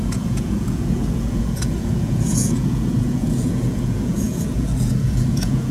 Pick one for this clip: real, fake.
fake